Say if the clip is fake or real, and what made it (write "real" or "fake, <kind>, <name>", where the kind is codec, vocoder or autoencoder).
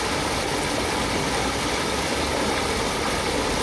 real